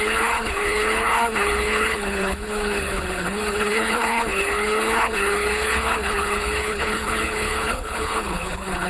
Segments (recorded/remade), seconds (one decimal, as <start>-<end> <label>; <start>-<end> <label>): 0.0-8.9 remade

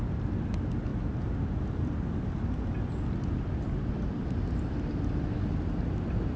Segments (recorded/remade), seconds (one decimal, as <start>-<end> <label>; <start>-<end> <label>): 0.0-6.4 recorded

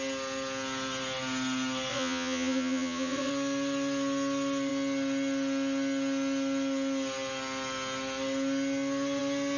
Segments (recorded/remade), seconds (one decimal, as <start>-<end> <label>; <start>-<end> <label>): 0.0-1.9 recorded; 1.9-3.3 remade; 3.3-9.6 recorded

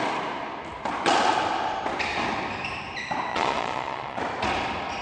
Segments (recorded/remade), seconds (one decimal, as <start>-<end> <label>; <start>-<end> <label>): 0.0-3.3 recorded; 3.3-4.2 remade; 4.2-5.0 recorded

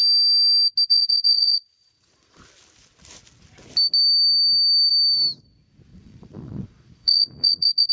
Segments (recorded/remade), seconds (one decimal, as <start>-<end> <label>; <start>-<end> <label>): 0.0-0.9 recorded; 0.9-2.4 remade; 2.4-5.9 recorded; 5.9-7.9 remade

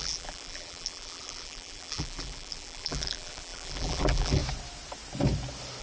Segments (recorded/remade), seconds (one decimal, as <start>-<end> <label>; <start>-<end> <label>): 0.0-4.4 remade; 4.4-5.8 recorded

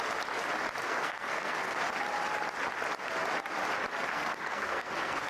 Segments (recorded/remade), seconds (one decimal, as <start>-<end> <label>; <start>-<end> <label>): 0.0-0.8 recorded; 0.8-1.8 remade; 1.8-4.1 recorded; 4.1-5.3 remade

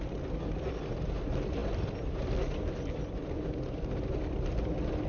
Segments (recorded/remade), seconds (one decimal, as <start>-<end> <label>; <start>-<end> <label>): 0.0-5.1 recorded